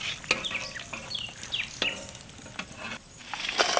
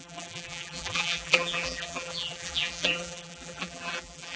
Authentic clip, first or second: first